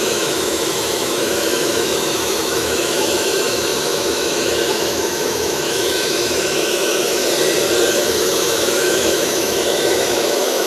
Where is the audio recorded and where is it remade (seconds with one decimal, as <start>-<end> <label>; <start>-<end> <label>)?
0.0-7.2 remade; 7.2-7.9 recorded; 7.9-10.7 remade